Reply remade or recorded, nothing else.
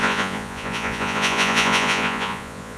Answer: remade